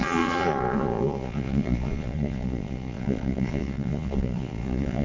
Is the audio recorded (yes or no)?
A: no